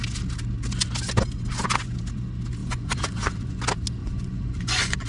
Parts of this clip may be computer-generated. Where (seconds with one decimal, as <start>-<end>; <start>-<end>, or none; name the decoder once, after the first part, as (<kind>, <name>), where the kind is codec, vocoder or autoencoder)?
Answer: 2.6-3.6 (vocoder, Vocos); 4.0-5.1